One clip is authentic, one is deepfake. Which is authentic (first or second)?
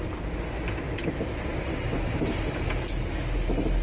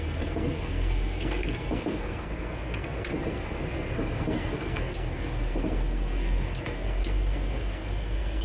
first